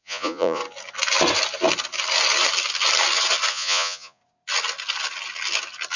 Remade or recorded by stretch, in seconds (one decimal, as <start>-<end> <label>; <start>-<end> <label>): 0.0-0.6 remade; 0.6-3.5 recorded; 3.5-4.2 remade; 4.2-6.0 recorded